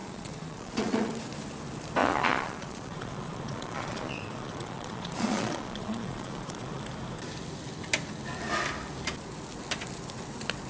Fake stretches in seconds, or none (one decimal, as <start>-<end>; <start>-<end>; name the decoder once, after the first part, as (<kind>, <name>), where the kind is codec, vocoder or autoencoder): 0.0-1.1 (vocoder, Vocos); 2.0-6.8